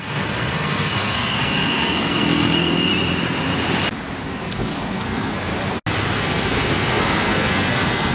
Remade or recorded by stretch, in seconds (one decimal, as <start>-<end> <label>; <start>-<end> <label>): 0.0-2.9 remade; 2.9-4.2 recorded; 4.2-5.5 remade; 5.5-6.2 recorded; 6.2-8.1 remade